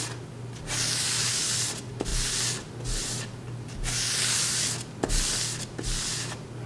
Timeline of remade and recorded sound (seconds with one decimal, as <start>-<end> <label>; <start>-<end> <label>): 0.0-6.7 recorded